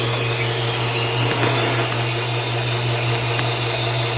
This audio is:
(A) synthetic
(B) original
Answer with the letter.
B